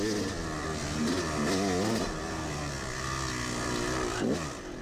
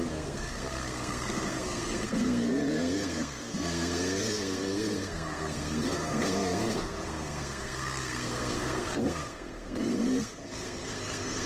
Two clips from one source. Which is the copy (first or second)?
second